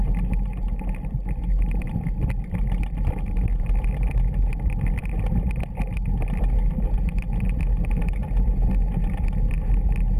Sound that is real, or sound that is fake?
real